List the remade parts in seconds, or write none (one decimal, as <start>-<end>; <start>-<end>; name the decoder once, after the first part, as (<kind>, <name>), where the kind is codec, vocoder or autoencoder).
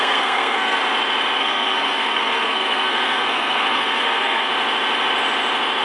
0.0-0.8 (codec, SNAC); 1.4-4.5